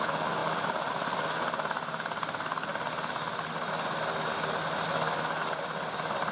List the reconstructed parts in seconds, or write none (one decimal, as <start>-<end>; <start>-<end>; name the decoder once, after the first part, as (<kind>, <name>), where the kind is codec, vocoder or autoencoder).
0.4-0.9 (vocoder, BigVGAN v2)